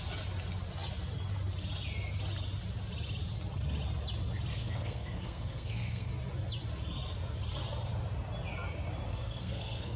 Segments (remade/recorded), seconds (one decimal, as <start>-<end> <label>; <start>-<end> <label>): 0.0-4.5 recorded; 4.5-6.1 remade; 6.1-9.1 recorded; 9.1-10.0 remade

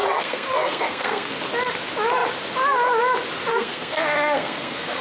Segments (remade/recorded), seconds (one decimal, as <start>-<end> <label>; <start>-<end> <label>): 0.0-1.4 remade; 1.4-3.5 recorded; 3.5-5.0 remade